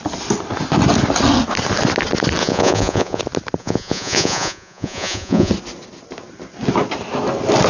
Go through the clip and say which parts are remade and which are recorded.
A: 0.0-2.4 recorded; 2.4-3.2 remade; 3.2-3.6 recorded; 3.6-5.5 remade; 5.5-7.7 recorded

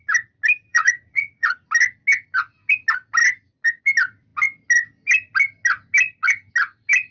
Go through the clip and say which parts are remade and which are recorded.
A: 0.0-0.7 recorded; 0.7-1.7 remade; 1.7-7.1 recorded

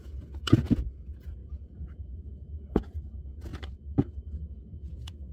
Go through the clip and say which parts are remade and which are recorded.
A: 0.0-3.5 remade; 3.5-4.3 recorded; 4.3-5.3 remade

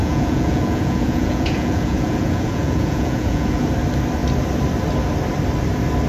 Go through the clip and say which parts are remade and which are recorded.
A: 0.0-3.7 remade; 3.7-6.1 recorded

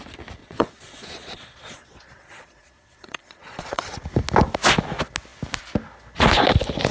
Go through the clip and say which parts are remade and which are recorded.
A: 0.0-0.4 recorded; 0.4-3.9 remade; 3.9-6.9 recorded

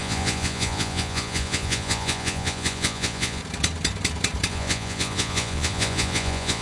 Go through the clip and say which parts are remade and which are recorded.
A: 0.0-3.4 remade; 3.4-4.5 recorded; 4.5-6.6 remade